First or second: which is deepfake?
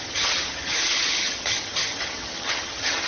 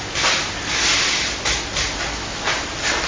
first